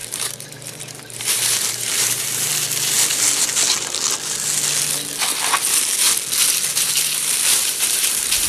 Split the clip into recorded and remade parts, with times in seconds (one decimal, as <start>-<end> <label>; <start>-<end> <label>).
0.0-2.5 remade; 2.5-6.7 recorded; 6.7-8.5 remade